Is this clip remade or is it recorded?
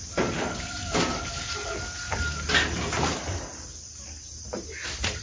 recorded